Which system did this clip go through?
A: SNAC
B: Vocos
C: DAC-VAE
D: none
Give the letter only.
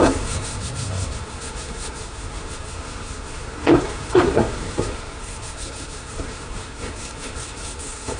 A